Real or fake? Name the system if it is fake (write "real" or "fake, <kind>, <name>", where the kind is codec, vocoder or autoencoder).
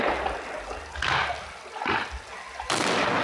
real